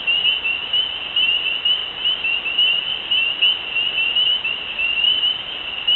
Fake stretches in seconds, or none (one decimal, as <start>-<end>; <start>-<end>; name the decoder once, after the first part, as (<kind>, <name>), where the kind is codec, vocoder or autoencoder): none